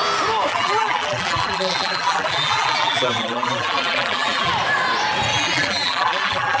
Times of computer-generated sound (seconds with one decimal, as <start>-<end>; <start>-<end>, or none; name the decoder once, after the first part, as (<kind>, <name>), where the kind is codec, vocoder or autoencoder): 0.5-4.5 (vocoder, BigVGAN v2); 5.3-6.6